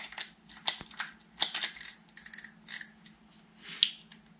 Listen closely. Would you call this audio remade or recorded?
recorded